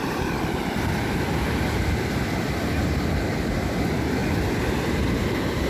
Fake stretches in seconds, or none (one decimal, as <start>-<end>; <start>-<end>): none